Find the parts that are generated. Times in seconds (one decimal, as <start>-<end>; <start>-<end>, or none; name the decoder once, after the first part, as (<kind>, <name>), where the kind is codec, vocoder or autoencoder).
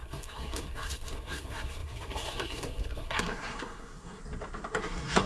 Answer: 0.0-4.2 (codec, SNAC); 4.7-5.3